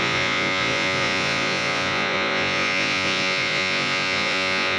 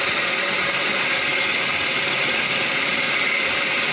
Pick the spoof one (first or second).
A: first